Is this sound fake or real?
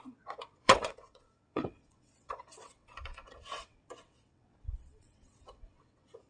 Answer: fake